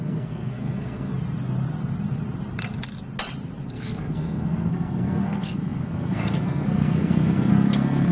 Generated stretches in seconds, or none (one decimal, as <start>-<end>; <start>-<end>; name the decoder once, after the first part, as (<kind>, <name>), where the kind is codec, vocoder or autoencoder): 0.0-1.1 (codec, SNAC); 3.7-8.1